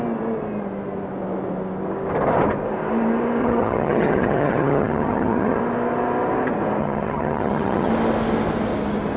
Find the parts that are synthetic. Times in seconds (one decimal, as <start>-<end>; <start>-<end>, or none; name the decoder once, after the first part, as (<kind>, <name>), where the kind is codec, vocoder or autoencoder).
3.4-5.6 (vocoder, HiFi-GAN); 6.8-7.9